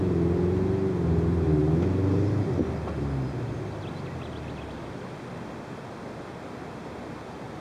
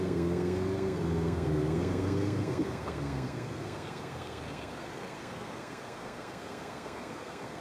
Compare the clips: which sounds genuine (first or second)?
first